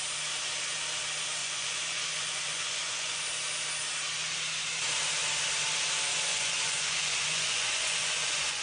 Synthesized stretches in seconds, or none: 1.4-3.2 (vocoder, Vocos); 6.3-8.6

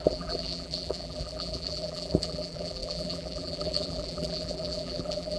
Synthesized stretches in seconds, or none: 0.0-5.4 (vocoder, BigVGAN v2)

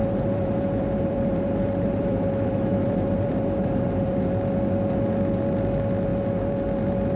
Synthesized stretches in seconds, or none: 0.0-4.3 (vocoder, BigVGAN v2)

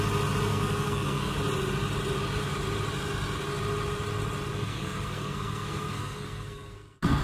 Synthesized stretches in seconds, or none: 0.5-1.3 (codec, SNAC); 4.5-7.2